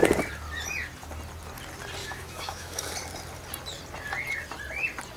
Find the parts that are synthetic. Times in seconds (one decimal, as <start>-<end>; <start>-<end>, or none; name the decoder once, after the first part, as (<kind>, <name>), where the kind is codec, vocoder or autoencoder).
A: 2.0-2.9 (autoencoder, DAC-VAE)

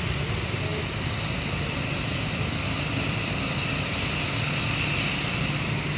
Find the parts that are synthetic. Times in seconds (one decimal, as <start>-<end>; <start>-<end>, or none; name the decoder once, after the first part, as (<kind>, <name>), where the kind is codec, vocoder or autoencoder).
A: none